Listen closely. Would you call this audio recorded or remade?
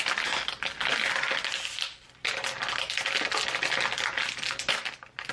recorded